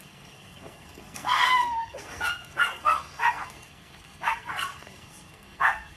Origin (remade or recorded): remade